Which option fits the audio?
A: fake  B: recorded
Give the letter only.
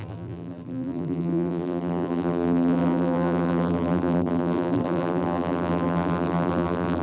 A